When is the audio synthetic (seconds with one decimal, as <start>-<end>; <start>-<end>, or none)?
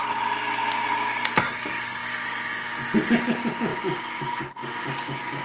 none